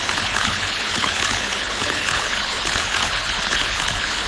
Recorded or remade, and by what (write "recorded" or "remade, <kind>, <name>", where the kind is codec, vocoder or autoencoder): remade, codec, HILCodec